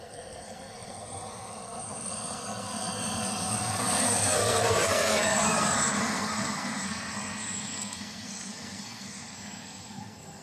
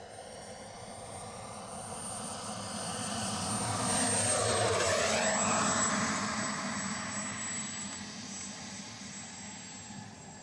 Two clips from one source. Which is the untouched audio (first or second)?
second